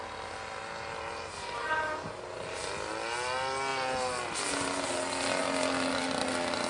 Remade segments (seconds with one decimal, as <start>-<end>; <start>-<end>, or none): none